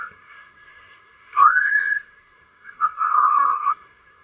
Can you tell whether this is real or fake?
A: fake